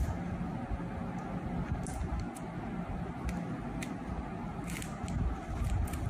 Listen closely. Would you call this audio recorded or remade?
recorded